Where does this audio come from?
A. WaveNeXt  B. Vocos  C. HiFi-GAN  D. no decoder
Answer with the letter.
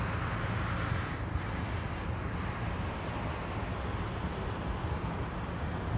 D